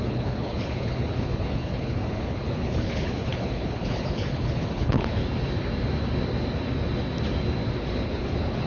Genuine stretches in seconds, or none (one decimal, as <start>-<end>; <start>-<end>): 5.2-7.8

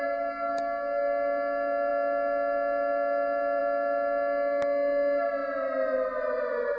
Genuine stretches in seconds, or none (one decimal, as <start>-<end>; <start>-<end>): 0.0-6.8